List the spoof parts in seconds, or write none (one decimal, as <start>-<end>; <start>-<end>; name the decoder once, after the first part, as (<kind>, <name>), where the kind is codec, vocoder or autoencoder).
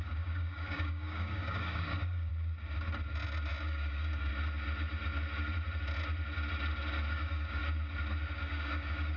0.0-2.3 (codec, DAC); 3.6-4.3; 7.1-7.6; 8.3-9.2